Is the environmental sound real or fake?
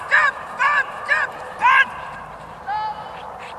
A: fake